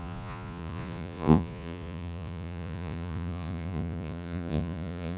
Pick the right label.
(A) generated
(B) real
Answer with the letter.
A